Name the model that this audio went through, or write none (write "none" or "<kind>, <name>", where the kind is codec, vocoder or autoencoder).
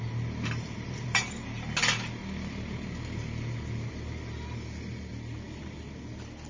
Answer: none